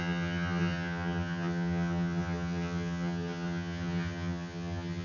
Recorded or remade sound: remade